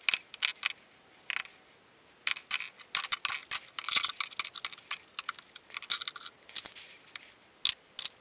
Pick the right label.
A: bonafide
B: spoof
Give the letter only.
A